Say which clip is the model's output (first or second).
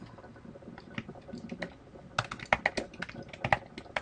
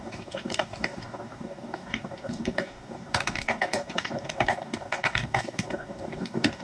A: second